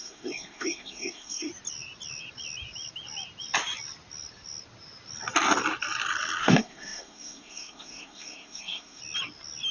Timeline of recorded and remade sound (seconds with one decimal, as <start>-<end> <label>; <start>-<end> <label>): 0.0-1.5 remade; 1.5-6.4 recorded; 6.4-9.0 remade; 9.0-9.7 recorded